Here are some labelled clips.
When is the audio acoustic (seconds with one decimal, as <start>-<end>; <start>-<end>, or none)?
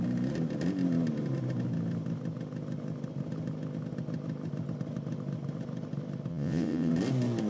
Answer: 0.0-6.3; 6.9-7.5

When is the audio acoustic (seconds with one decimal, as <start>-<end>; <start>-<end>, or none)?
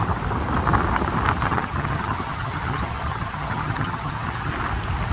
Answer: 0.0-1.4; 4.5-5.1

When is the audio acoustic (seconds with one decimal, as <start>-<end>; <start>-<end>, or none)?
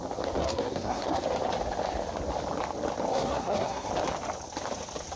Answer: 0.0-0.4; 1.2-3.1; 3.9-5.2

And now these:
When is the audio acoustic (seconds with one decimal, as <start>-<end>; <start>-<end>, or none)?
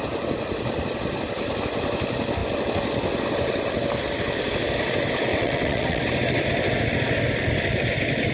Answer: 0.0-5.3; 6.0-8.3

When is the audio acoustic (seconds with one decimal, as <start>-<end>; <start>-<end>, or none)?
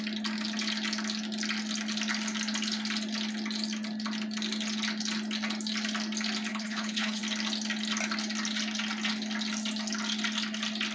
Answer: 0.0-6.5; 7.2-10.9